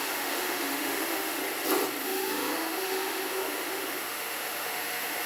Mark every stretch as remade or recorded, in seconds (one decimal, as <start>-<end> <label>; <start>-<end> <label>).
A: 0.0-1.4 remade; 1.4-2.0 recorded; 2.0-5.3 remade